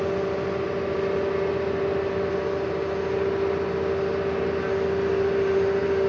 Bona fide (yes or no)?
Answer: yes